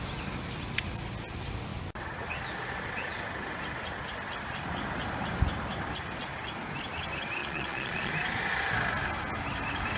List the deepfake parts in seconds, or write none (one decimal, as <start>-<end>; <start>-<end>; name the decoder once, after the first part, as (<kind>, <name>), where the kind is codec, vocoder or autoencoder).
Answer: 7.4-8.1 (vocoder, Vocos)